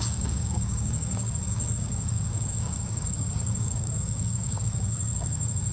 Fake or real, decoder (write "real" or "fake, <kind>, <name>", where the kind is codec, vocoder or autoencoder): fake, codec, DAC